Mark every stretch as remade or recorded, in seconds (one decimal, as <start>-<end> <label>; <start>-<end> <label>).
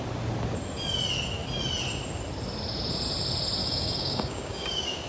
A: 0.0-3.6 recorded; 3.6-5.1 remade